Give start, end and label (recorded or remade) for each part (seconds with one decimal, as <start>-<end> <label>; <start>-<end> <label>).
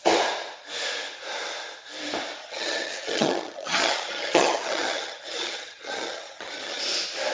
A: 0.0-2.4 recorded; 2.4-6.8 remade; 6.8-7.3 recorded